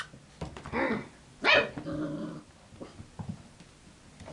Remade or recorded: recorded